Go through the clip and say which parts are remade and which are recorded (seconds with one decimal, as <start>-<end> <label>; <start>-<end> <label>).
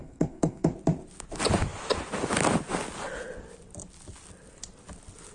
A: 0.0-0.7 remade; 0.7-5.3 recorded